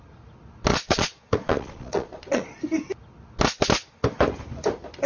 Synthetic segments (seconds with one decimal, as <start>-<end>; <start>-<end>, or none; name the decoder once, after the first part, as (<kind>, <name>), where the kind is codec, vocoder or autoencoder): 0.7-2.6 (vocoder, Vocos)